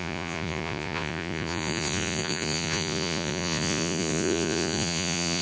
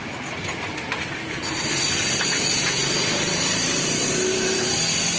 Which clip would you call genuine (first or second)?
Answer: second